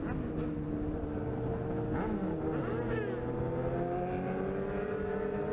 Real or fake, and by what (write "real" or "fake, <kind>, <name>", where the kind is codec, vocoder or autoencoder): real